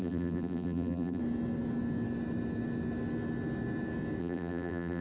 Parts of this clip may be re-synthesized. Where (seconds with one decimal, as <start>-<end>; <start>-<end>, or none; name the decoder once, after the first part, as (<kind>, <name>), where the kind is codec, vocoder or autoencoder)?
0.0-1.2 (vocoder, BigVGAN v2); 4.2-5.0